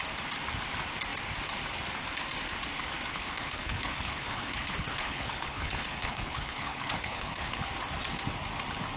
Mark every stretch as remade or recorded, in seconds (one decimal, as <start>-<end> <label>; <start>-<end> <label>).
0.0-3.1 recorded; 3.1-7.6 remade; 7.6-9.0 recorded